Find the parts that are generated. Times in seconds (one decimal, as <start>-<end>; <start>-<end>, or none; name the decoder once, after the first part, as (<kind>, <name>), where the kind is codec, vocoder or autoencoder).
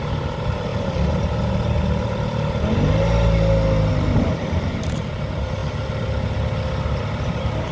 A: 0.0-0.7 (vocoder, BigVGAN v2); 3.9-5.6; 7.3-7.7